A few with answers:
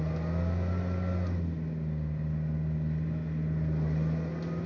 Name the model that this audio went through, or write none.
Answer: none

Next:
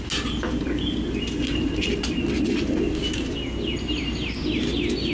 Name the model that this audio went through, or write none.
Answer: none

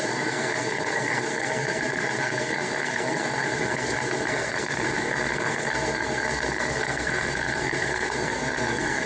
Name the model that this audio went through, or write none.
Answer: codec, SNAC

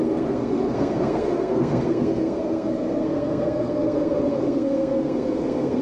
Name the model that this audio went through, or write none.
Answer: codec, SNAC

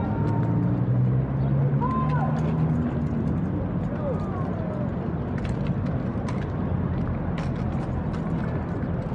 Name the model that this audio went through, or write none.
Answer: none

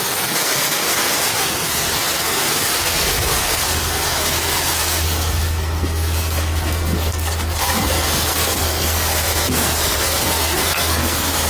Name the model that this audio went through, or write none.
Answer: codec, SNAC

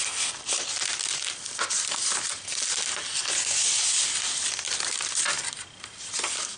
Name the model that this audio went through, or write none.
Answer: none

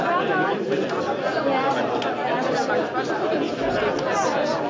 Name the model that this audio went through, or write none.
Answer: none